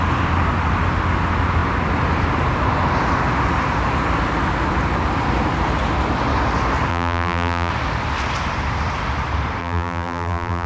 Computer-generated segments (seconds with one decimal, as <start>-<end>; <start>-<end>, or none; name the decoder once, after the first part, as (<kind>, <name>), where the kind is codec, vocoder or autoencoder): 6.9-7.7 (vocoder, BigVGAN v2); 9.6-10.7